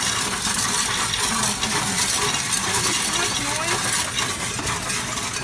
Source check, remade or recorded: recorded